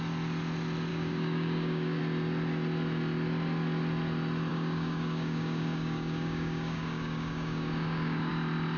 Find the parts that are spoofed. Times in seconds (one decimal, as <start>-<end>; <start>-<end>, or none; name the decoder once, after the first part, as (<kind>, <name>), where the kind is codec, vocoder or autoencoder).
0.9-2.0 (codec, DAC); 4.5-8.3

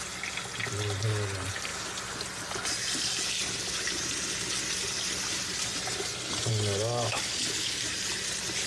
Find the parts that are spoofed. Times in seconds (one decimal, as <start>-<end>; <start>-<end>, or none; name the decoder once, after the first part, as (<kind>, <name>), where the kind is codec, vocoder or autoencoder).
7.1-7.8 (codec, HILCodec)

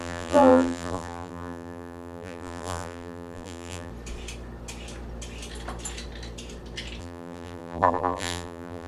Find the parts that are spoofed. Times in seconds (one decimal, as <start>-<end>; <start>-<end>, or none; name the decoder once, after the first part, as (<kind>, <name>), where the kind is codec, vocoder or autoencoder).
0.0-3.9 (vocoder, BigVGAN v2); 7.0-8.9

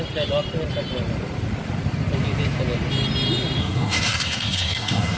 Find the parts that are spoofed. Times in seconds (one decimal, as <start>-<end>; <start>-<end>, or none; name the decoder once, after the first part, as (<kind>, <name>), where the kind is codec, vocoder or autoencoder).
3.6-5.2 (codec, SNAC)

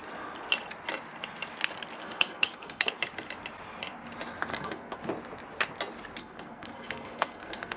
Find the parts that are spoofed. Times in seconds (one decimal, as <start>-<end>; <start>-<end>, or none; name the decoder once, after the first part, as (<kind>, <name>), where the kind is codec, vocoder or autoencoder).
2.0-2.9 (codec, SNAC); 4.5-5.0; 6.2-7.8